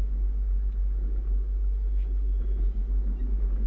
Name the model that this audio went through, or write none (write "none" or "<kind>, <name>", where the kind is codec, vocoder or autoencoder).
none